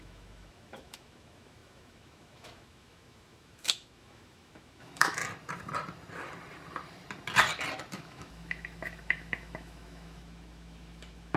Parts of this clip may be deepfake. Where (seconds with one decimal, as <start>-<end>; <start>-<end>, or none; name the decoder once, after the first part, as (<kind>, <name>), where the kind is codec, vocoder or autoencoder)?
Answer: 0.0-5.2 (autoencoder, DAC-VAE); 7.9-11.4